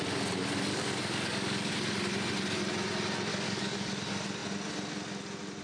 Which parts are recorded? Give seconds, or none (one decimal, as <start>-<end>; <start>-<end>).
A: 0.0-0.7; 1.7-3.3; 3.9-5.6